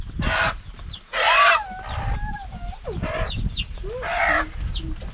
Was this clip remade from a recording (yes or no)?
no